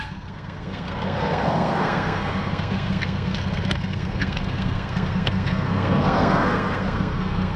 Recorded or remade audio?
remade